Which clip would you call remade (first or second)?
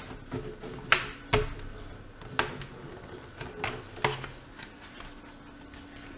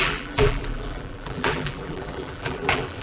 second